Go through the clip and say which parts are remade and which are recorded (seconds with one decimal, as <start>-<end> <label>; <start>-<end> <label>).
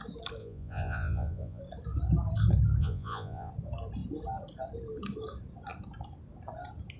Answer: 0.0-0.4 recorded; 0.4-1.6 remade; 1.6-2.8 recorded; 2.8-3.5 remade; 3.5-7.0 recorded